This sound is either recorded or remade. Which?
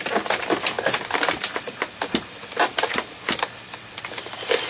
recorded